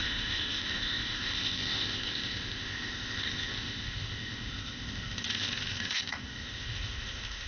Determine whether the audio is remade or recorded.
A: remade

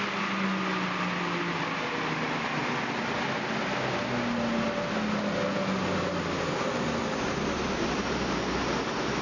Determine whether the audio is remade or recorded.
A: recorded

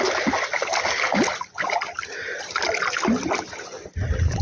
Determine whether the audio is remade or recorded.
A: recorded